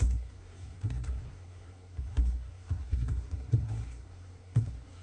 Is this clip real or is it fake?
fake